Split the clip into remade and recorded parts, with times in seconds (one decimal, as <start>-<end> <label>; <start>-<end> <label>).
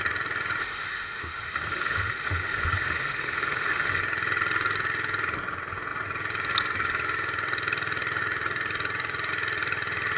0.0-0.6 recorded; 0.6-4.0 remade; 4.0-10.2 recorded